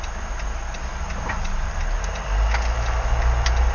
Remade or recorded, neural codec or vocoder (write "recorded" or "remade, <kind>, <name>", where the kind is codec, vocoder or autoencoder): recorded